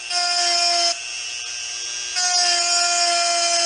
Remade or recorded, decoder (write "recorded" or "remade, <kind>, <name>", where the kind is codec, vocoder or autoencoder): recorded